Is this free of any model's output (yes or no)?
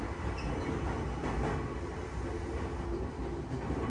yes